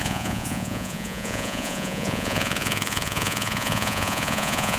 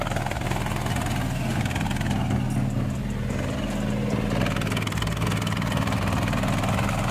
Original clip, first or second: second